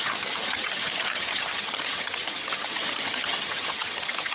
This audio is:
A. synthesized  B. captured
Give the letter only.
A